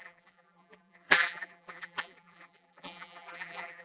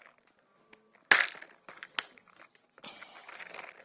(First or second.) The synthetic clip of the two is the first